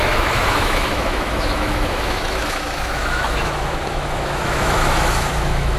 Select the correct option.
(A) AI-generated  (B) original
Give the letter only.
A